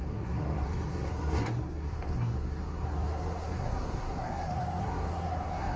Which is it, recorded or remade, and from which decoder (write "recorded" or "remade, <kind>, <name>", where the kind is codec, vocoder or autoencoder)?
remade, codec, SNAC